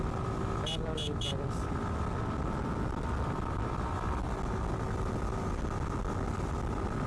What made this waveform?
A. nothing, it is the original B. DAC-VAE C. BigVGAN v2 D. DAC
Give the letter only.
A